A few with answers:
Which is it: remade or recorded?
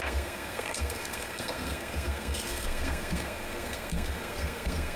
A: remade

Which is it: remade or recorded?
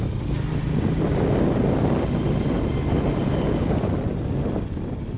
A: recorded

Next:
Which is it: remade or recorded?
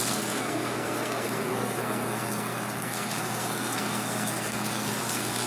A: remade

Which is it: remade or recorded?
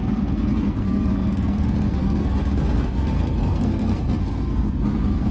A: remade